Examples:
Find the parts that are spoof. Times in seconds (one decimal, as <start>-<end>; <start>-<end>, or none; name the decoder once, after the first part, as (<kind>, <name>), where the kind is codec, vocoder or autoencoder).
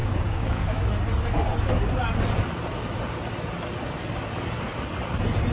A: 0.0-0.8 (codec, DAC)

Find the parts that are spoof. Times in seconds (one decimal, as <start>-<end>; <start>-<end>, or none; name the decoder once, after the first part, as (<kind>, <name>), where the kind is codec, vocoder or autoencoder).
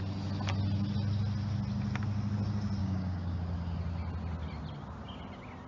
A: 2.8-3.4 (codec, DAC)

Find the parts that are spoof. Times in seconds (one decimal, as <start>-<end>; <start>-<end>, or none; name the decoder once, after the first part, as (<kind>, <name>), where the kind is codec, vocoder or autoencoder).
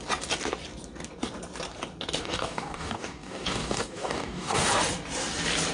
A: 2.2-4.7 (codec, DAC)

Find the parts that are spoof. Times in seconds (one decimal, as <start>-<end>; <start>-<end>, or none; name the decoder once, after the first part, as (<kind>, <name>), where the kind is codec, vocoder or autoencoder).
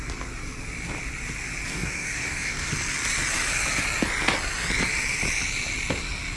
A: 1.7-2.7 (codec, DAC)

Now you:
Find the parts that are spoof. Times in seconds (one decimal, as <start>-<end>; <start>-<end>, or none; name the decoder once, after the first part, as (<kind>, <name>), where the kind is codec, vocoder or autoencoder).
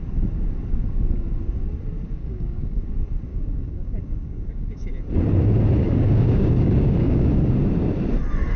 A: 2.2-2.8 (codec, DAC); 3.3-4.9; 5.8-7.5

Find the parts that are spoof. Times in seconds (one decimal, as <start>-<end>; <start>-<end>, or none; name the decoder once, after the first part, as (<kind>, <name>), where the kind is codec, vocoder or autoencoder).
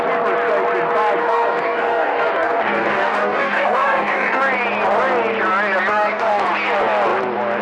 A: 1.2-4.4 (codec, DAC); 5.9-6.5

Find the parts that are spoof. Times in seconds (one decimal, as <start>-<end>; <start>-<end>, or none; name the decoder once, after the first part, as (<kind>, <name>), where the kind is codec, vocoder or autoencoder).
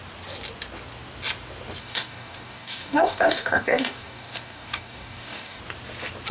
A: 1.8-5.6 (codec, DAC)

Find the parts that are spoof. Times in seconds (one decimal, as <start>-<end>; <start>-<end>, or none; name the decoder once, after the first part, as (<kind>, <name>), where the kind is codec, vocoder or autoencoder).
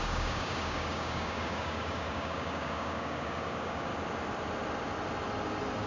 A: 0.0-3.9 (codec, DAC)